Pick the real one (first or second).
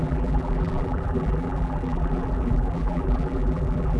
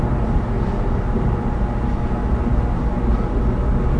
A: second